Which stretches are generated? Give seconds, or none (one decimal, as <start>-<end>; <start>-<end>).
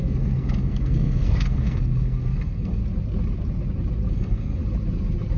0.0-2.8; 4.1-4.6